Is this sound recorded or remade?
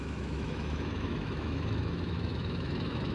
remade